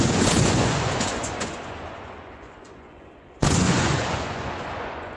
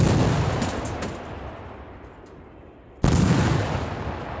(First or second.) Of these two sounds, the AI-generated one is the first